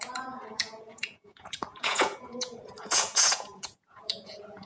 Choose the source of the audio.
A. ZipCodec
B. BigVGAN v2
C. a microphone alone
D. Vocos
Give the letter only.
D